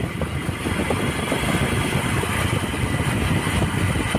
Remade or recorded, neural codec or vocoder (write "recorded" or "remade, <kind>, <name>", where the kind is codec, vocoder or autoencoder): recorded